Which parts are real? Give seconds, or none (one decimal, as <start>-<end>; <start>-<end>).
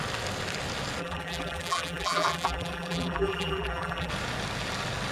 0.0-1.0; 4.1-5.1